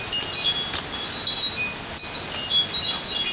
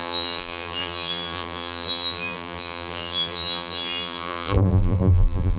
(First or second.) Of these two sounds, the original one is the first